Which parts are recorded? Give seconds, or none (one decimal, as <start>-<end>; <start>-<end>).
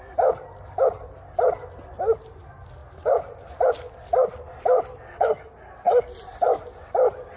0.0-7.4